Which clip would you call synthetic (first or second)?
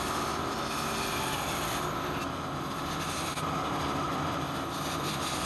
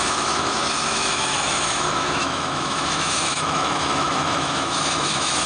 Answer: second